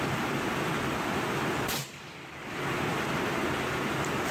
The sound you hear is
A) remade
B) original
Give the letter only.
B